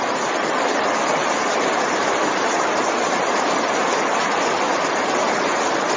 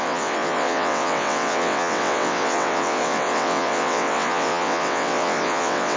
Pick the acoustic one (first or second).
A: first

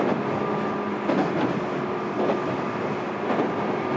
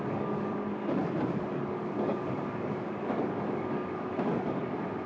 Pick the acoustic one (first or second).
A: first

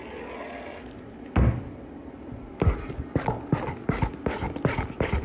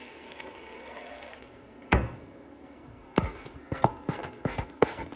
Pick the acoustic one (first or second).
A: first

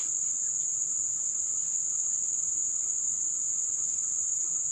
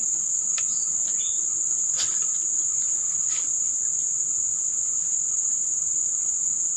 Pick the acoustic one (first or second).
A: first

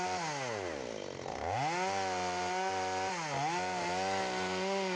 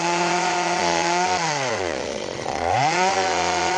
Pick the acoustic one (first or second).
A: first